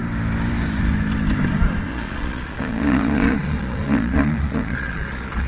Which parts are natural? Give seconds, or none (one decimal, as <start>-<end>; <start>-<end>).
0.0-1.9